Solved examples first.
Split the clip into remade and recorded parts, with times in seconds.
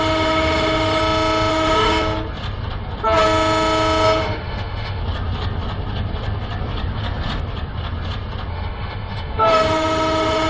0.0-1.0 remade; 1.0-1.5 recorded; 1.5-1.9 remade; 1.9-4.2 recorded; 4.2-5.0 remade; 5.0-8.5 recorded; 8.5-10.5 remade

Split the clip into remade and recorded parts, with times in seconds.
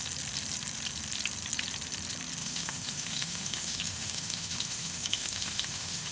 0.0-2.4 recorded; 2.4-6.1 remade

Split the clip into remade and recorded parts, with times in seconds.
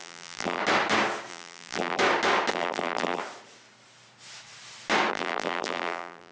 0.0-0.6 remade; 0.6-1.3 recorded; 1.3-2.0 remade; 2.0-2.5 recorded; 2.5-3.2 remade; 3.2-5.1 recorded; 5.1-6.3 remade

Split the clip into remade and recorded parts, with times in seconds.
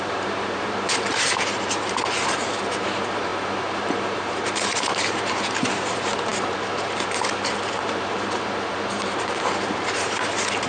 0.0-10.7 remade